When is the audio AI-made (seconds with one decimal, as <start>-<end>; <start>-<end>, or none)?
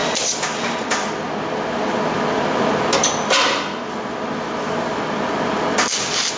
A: none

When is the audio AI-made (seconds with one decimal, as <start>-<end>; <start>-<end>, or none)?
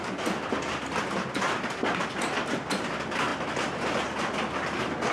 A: none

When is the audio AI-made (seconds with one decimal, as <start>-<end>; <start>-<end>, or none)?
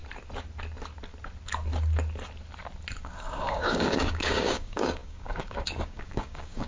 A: 3.0-6.7